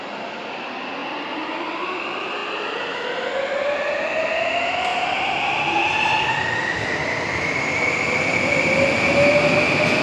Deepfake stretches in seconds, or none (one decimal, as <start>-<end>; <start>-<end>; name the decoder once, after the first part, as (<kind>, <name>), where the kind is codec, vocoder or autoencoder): 1.0-1.5 (vocoder, BigVGAN v2); 4.9-9.0